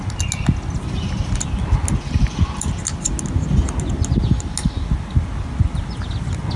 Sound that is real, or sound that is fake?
real